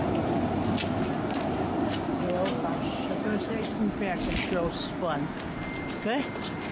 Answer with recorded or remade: recorded